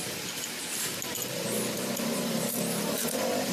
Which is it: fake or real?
real